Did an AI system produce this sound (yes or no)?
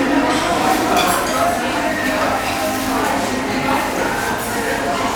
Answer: yes